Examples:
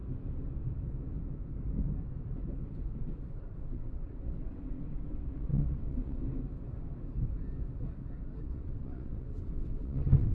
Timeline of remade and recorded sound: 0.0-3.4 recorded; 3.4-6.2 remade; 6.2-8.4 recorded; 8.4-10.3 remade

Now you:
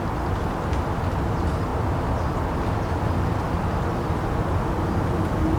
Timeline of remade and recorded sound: 0.0-5.6 recorded

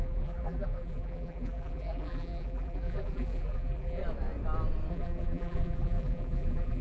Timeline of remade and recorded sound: 0.0-4.0 remade; 4.0-4.9 recorded; 4.9-6.8 remade

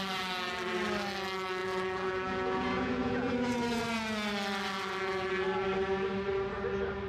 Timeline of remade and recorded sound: 0.0-1.6 recorded; 1.6-3.3 remade; 3.3-7.1 recorded